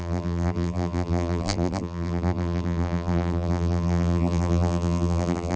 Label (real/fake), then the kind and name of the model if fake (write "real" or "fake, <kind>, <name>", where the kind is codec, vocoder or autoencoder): fake, vocoder, BigVGAN v2